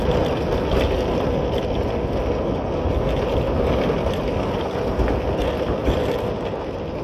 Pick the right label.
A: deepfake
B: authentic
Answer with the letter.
B